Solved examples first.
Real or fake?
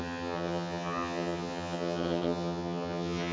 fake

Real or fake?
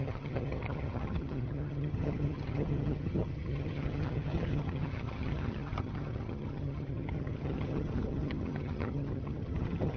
fake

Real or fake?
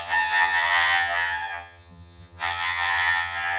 fake